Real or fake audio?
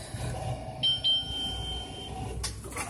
real